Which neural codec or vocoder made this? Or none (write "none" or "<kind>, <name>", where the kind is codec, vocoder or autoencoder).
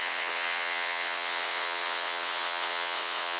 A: vocoder, WaveNeXt